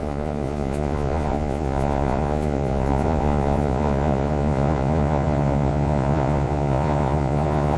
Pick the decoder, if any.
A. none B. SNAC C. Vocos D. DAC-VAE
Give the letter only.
C